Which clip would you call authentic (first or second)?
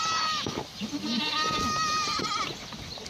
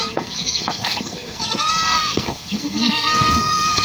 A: first